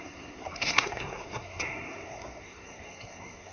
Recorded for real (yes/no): no